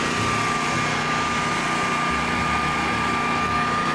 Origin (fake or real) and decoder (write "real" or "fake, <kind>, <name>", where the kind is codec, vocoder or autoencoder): real